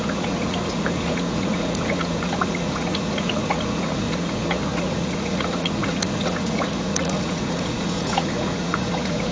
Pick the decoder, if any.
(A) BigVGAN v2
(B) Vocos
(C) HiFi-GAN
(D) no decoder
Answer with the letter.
B